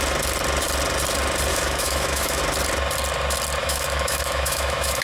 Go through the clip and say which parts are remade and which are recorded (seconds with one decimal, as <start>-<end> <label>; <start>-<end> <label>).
0.0-1.5 recorded; 1.5-2.4 remade; 2.4-3.6 recorded; 3.6-5.0 remade